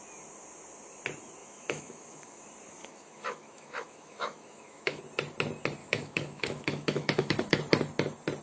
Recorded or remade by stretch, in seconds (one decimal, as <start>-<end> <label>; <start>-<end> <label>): 0.0-1.4 recorded; 1.4-2.4 remade; 2.4-2.8 recorded; 2.8-5.0 remade; 5.0-5.8 recorded; 5.8-7.6 remade; 7.6-8.4 recorded